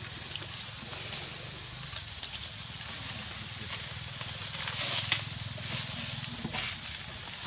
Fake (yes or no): no